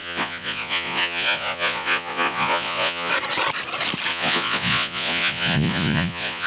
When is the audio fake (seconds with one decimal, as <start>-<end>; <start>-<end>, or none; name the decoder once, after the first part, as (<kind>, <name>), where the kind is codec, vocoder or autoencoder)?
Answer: 0.0-3.1 (vocoder, Vocos); 4.1-6.5